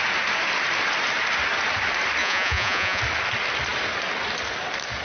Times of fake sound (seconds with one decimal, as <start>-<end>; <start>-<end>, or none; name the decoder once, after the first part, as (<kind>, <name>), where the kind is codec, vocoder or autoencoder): 2.2-3.0 (vocoder, Vocos)